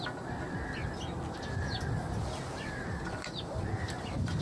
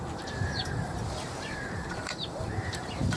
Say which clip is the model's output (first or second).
second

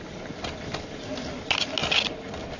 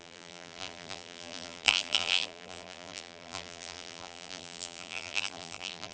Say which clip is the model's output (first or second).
second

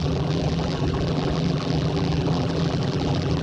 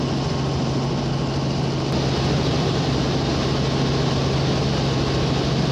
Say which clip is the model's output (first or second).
first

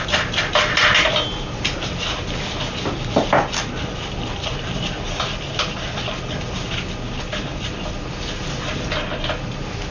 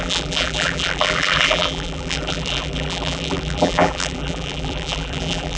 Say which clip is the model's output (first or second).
second